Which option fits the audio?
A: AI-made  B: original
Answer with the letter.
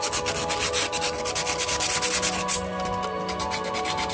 B